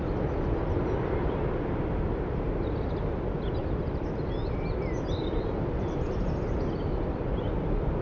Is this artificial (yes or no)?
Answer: no